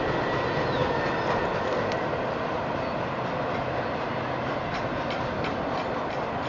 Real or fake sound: real